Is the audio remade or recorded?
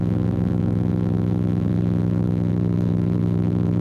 remade